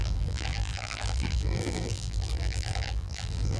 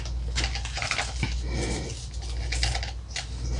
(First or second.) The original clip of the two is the second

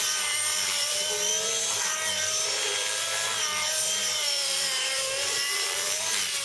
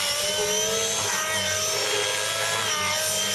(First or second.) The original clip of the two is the second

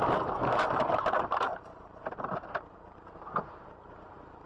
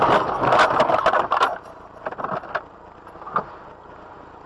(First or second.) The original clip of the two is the second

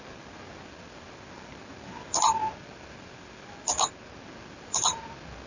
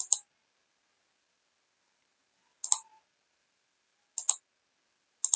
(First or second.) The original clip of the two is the second